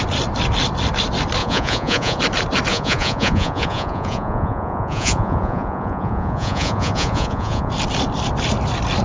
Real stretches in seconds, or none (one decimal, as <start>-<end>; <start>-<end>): 0.0-1.4; 2.2-2.7; 7.7-9.0